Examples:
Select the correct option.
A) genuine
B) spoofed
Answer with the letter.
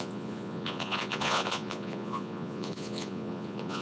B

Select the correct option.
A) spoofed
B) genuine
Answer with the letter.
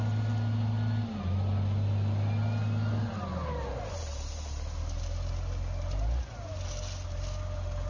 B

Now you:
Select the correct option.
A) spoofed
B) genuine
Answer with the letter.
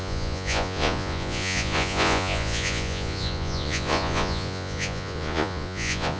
A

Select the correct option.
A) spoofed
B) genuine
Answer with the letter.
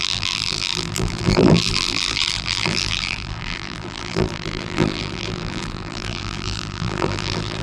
A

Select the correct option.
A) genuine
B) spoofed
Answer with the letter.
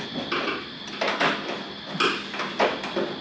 A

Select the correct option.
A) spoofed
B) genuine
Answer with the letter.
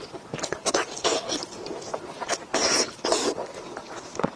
B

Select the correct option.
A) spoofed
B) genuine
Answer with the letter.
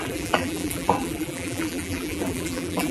A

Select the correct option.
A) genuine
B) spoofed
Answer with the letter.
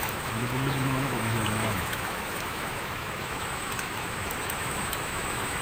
B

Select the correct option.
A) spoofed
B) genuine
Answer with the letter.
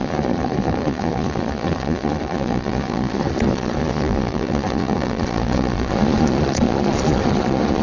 A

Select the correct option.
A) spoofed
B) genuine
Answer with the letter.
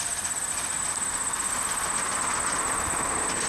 B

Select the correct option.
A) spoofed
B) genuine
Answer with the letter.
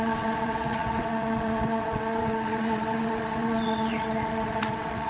A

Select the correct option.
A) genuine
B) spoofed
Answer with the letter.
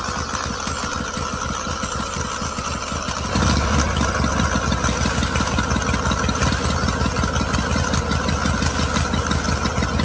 A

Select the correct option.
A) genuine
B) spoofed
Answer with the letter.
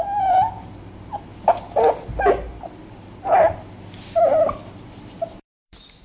B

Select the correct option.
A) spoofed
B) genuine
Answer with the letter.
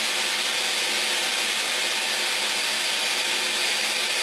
B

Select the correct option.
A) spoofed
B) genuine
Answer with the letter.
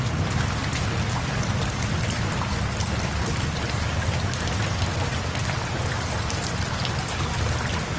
B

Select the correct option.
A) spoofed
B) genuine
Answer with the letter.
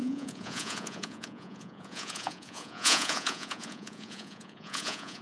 A